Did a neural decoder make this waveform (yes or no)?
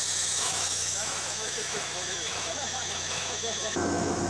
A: yes